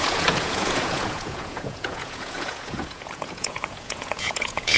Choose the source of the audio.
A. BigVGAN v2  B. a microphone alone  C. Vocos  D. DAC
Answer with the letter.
C